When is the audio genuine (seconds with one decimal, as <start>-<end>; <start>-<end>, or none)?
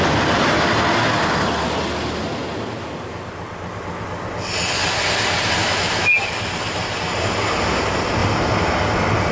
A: 0.0-5.6; 6.2-9.3